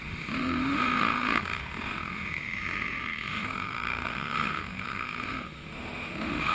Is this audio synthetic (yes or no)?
yes